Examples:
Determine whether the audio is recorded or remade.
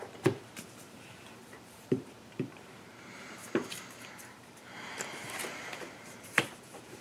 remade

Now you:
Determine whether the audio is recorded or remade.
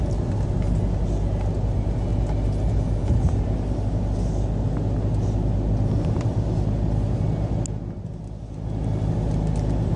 recorded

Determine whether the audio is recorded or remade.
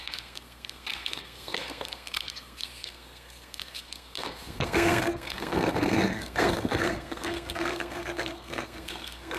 remade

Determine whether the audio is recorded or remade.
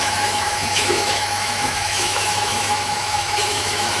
remade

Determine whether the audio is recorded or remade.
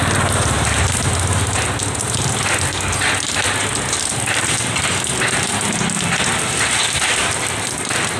recorded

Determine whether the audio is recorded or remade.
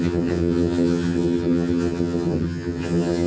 remade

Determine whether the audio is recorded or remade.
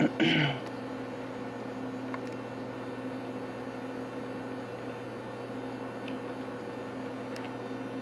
recorded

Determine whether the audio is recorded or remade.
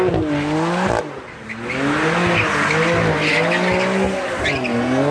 recorded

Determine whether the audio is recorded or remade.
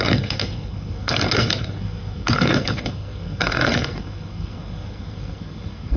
remade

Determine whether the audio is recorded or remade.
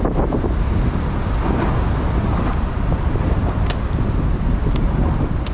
recorded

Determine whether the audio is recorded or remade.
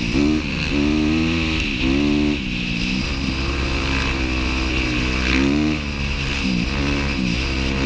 recorded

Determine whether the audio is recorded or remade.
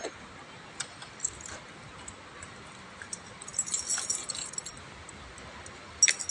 recorded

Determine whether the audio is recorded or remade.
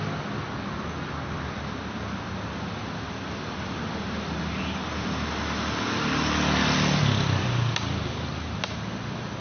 recorded